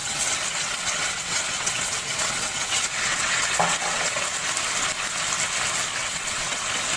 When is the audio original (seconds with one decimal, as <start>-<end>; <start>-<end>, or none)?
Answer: 4.2-6.0; 6.6-7.0